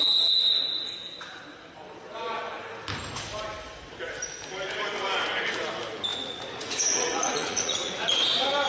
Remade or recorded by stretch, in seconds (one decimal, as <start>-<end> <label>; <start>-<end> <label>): 0.0-6.1 recorded; 6.1-8.2 remade; 8.2-8.7 recorded